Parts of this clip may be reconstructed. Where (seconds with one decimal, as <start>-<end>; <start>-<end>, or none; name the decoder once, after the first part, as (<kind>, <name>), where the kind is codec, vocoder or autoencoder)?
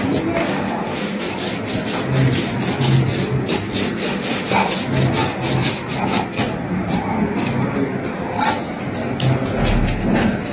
0.4-1.2 (autoencoder, DAC-VAE); 4.0-4.7